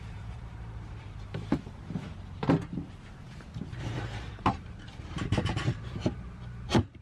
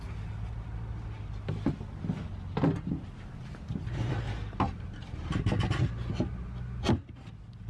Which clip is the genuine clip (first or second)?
second